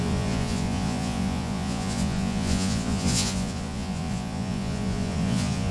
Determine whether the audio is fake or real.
fake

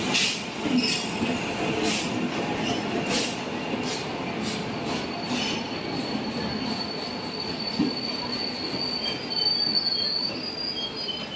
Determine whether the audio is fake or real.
real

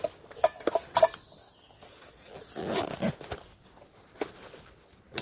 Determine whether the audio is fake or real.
real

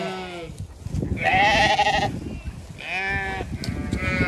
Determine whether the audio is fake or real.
real